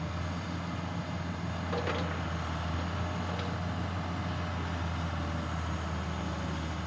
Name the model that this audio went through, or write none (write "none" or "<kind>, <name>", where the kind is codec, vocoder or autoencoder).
none